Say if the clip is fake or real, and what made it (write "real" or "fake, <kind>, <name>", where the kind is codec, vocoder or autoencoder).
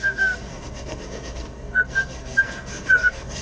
fake, codec, SNAC